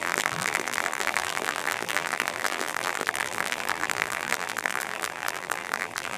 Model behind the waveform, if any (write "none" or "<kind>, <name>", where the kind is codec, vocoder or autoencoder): vocoder, BigVGAN v2